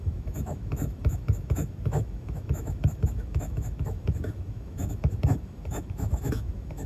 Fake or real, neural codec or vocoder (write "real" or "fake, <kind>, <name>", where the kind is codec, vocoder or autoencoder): fake, autoencoder, DAC-VAE